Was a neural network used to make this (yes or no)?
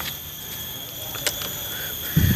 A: no